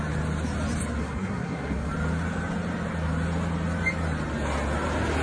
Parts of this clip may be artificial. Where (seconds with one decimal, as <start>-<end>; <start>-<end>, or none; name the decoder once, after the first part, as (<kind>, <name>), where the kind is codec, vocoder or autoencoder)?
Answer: 1.0-1.9 (codec, SNAC)